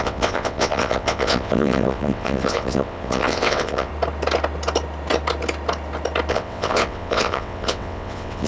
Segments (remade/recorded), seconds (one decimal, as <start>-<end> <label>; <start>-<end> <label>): 0.0-3.9 remade; 3.9-6.3 recorded; 6.3-8.5 remade